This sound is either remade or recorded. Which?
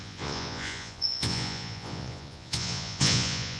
remade